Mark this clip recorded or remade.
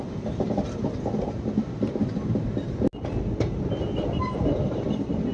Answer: recorded